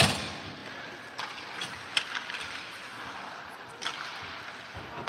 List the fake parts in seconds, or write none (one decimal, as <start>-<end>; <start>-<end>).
none